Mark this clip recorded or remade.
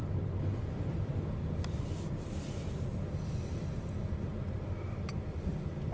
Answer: recorded